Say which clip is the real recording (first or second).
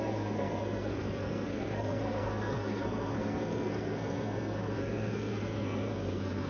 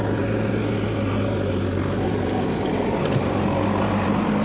second